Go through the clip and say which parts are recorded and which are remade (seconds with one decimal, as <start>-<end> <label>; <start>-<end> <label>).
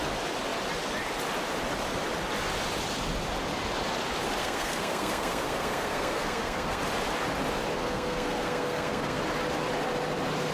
0.0-4.4 recorded; 4.4-6.8 remade; 6.8-7.7 recorded; 7.7-9.2 remade; 9.2-10.5 recorded